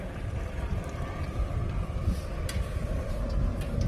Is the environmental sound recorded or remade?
recorded